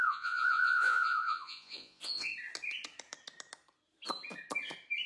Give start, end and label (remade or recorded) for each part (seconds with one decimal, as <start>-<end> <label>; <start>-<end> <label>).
0.0-2.3 remade; 2.3-5.1 recorded

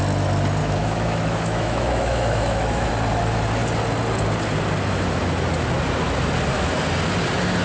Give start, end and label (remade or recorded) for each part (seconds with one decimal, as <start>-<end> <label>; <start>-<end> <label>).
0.0-0.6 recorded; 0.6-2.9 remade; 2.9-7.6 recorded

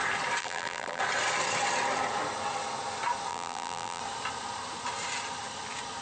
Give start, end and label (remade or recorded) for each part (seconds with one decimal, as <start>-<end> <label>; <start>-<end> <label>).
0.0-0.4 recorded; 0.4-1.0 remade; 1.0-3.3 recorded; 3.3-4.0 remade; 4.0-6.0 recorded